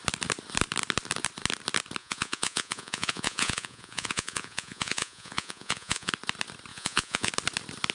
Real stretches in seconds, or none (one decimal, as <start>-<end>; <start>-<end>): 0.0-2.0; 6.1-6.7; 7.3-7.9